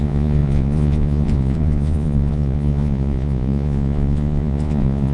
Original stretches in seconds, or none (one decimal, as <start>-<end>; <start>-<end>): none